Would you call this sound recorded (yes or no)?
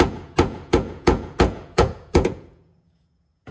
no